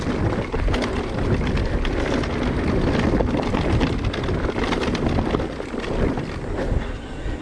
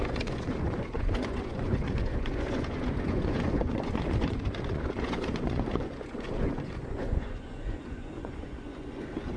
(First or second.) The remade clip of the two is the second